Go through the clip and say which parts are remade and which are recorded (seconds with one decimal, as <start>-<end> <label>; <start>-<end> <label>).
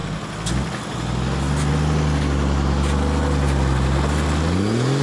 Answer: 0.0-5.0 recorded